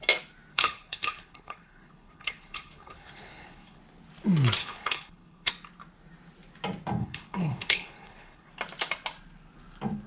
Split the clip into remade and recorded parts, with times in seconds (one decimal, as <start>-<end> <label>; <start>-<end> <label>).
0.0-0.5 recorded; 0.5-3.8 remade; 3.8-4.6 recorded; 4.6-5.5 remade; 5.5-7.0 recorded; 7.0-8.5 remade; 8.5-10.1 recorded